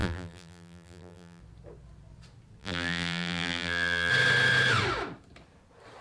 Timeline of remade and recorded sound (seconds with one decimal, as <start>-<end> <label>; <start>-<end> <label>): 0.0-1.4 remade; 1.4-2.6 recorded; 2.6-4.1 remade; 4.1-6.0 recorded